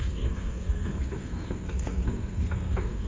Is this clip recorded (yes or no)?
no